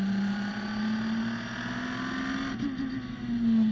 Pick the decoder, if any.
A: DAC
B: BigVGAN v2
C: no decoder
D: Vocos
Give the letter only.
C